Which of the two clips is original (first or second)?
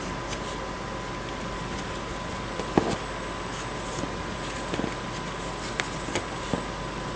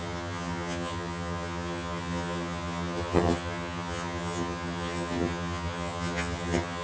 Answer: first